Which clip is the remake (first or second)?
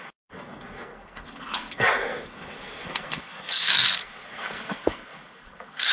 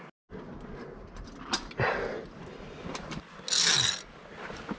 first